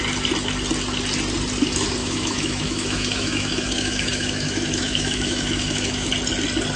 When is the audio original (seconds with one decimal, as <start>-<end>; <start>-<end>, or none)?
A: 0.0-2.0; 6.1-6.8